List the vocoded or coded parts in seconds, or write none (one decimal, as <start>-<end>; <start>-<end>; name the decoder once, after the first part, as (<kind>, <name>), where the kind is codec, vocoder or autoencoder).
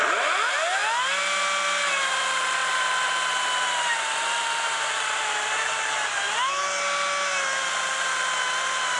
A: 2.6-5.2 (vocoder, BigVGAN v2)